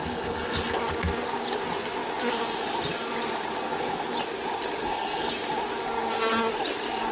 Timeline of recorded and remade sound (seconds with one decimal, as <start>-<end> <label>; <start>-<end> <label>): 0.0-0.8 remade; 0.8-4.8 recorded; 4.8-5.3 remade; 5.3-7.1 recorded